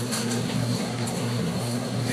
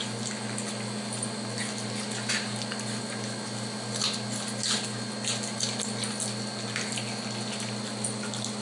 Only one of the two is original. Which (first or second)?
second